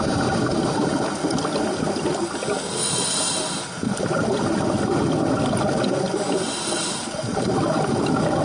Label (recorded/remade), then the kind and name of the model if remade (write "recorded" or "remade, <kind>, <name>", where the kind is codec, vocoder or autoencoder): recorded